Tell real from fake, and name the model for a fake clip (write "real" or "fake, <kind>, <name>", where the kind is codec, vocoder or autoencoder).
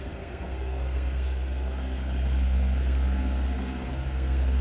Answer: fake, codec, SNAC